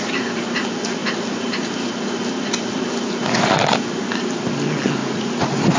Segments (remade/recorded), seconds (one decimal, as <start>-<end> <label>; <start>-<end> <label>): 0.0-5.0 recorded; 5.0-5.8 remade